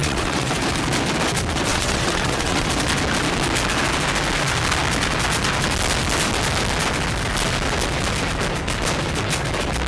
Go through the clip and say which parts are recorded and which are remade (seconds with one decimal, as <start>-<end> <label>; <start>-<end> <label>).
0.0-0.5 remade; 0.5-1.7 recorded; 1.7-2.7 remade; 2.7-9.9 recorded